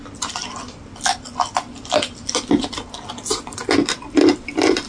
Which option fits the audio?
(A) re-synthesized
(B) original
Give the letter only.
B